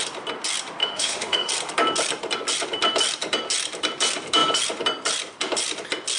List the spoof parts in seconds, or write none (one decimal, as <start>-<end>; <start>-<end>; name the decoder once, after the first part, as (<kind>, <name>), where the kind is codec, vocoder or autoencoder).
0.8-1.5 (autoencoder, DAC-VAE)